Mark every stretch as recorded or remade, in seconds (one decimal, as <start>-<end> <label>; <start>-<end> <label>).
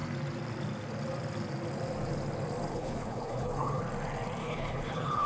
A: 0.0-2.7 recorded; 2.7-3.8 remade; 3.8-4.4 recorded; 4.4-5.3 remade